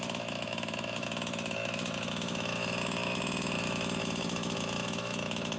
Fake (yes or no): yes